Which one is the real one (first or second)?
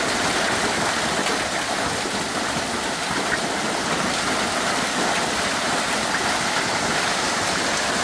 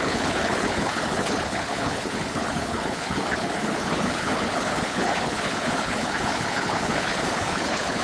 first